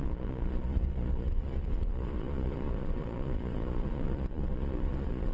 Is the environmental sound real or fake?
fake